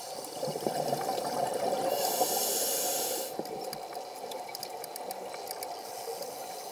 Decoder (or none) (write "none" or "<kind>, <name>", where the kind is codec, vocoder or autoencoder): none